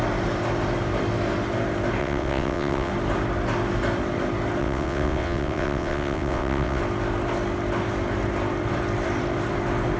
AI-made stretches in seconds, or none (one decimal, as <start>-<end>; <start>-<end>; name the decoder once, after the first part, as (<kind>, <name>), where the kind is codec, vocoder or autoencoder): 2.0-2.9 (vocoder, WaveNeXt); 4.6-6.8